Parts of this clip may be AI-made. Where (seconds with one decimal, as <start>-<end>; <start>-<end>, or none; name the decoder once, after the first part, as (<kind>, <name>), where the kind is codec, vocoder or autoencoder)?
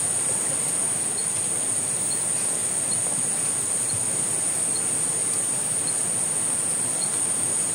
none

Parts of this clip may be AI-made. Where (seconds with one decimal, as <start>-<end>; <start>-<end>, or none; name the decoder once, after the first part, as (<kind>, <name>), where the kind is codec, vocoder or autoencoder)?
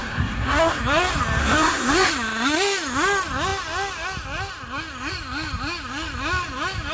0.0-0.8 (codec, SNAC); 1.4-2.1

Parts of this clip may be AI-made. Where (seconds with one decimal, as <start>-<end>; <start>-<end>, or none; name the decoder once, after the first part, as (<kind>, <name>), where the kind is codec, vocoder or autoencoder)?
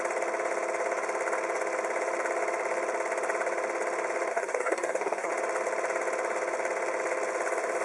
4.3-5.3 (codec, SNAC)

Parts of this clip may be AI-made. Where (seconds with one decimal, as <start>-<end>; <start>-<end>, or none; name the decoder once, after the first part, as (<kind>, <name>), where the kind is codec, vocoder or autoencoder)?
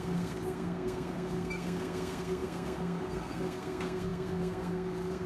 0.0-5.3 (codec, SNAC)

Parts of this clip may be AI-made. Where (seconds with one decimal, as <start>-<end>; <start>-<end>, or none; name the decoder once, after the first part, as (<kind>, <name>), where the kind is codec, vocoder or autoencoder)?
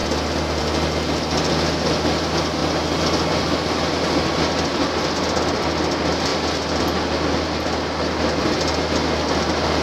none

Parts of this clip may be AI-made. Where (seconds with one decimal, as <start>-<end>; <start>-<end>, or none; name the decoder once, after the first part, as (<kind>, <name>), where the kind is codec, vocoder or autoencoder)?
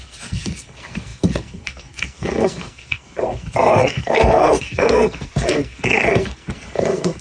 0.0-7.2 (codec, SNAC)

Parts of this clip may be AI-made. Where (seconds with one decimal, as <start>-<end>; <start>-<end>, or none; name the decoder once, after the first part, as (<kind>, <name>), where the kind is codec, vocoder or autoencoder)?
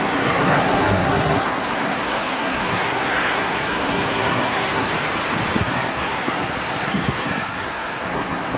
0.0-4.9 (codec, SNAC); 5.6-8.6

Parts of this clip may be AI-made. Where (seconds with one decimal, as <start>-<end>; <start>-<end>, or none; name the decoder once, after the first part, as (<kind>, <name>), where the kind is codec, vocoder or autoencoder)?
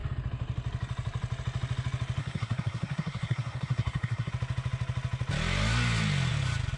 2.2-4.3 (codec, SNAC)